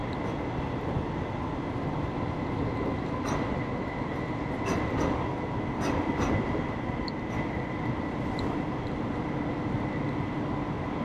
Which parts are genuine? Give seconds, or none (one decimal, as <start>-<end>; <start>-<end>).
0.0-11.0